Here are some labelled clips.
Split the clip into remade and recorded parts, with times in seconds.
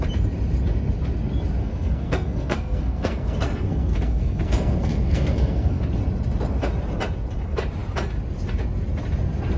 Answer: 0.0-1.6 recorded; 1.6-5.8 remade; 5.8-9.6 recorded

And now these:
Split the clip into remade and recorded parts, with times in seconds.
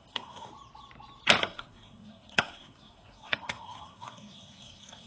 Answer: 0.0-0.5 remade; 0.5-1.4 recorded; 1.4-5.1 remade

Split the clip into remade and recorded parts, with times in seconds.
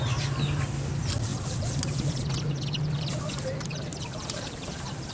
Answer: 0.0-5.1 recorded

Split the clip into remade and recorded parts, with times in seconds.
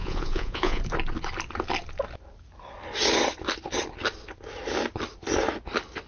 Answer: 0.0-0.8 remade; 0.8-6.1 recorded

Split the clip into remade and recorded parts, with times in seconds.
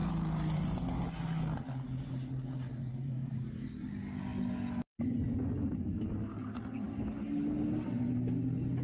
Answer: 0.0-1.0 remade; 1.0-2.7 recorded; 2.7-3.3 remade; 3.3-8.8 recorded